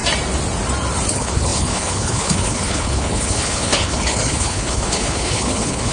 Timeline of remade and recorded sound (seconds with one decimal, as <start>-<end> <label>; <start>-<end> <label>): 0.0-1.1 recorded; 1.1-5.9 remade